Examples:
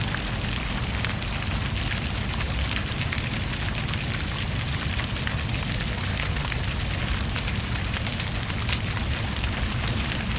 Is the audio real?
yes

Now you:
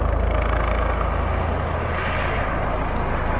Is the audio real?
yes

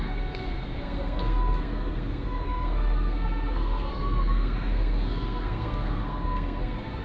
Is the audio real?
no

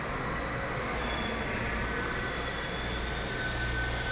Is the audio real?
yes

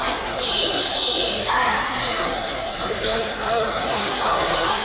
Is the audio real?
no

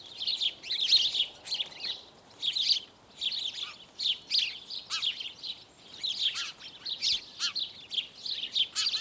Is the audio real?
yes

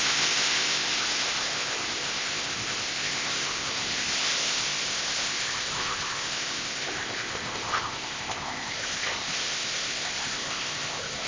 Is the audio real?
no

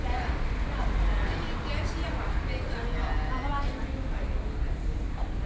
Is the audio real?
yes